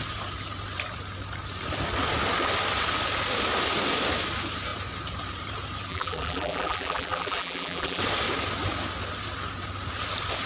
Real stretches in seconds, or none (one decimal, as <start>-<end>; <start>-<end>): 0.0-5.9; 8.0-10.5